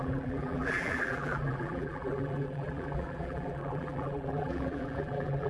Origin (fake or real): fake